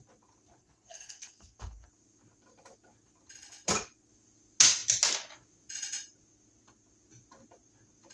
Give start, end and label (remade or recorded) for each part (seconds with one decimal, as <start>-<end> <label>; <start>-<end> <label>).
0.0-0.6 recorded; 0.6-1.9 remade; 1.9-8.1 recorded